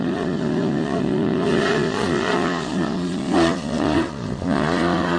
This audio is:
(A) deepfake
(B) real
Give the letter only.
A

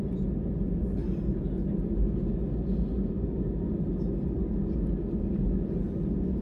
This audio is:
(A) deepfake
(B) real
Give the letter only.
B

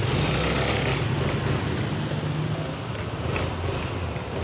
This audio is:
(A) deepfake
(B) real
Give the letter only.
B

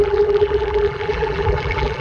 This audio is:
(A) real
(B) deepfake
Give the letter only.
B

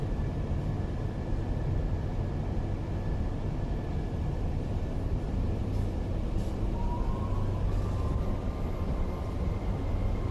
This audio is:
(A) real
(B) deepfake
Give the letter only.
A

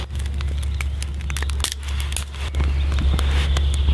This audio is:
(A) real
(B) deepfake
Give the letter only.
A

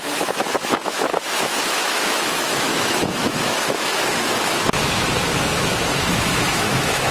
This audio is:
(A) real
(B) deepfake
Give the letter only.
B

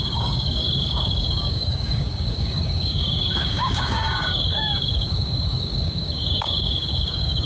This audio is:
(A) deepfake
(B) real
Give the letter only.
A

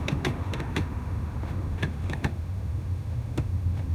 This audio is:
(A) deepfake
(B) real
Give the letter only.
A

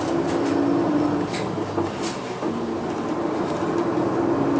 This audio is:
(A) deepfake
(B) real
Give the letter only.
B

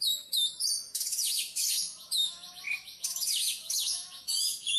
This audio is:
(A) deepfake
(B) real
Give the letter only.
A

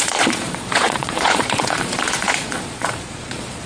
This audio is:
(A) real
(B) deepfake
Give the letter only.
B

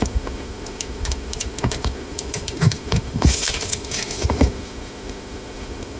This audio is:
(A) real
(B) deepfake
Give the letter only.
B